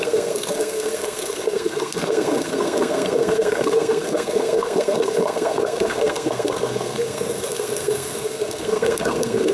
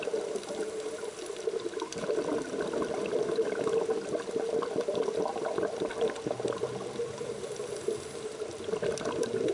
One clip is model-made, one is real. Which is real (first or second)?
second